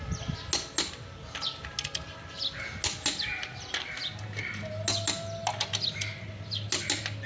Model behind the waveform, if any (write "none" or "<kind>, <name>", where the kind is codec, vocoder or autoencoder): none